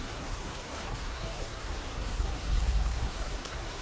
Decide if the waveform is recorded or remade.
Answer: remade